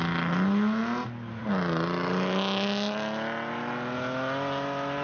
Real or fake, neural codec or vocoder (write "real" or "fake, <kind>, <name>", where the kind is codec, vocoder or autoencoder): real